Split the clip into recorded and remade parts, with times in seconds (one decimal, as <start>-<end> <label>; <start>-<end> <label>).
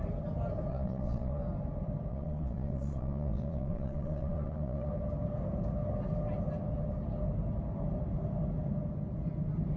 0.0-0.7 recorded; 0.7-1.4 remade; 1.4-2.1 recorded; 2.1-4.9 remade; 4.9-9.8 recorded